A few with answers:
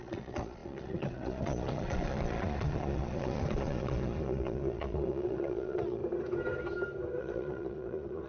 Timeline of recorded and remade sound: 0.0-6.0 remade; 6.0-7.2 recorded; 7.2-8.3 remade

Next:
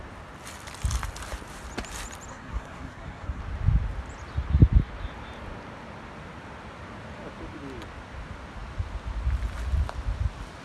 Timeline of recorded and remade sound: 0.0-2.3 recorded; 2.3-3.4 remade; 3.4-10.6 recorded

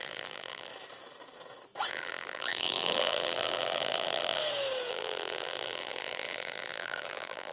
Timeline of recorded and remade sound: 0.0-0.7 remade; 0.7-1.9 recorded; 1.9-4.4 remade; 4.4-4.9 recorded; 4.9-7.5 remade

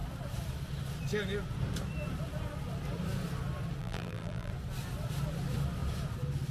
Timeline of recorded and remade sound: 0.0-3.8 recorded; 3.8-4.5 remade; 4.5-6.5 recorded

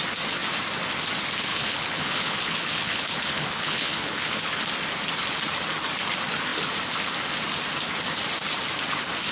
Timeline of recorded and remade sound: 0.0-1.5 recorded; 1.5-4.5 remade; 4.5-9.3 recorded

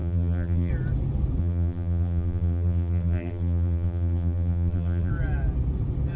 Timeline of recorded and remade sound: 0.0-0.7 remade; 0.7-1.4 recorded; 1.4-5.1 remade; 5.1-6.2 recorded

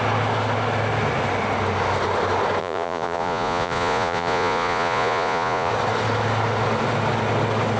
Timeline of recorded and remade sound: 0.0-2.6 recorded; 2.6-5.7 remade; 5.7-7.8 recorded